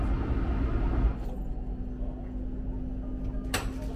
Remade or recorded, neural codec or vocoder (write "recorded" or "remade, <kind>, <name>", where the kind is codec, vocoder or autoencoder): recorded